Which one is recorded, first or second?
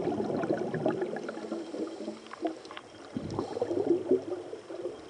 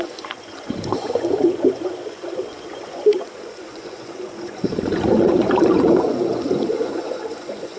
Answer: first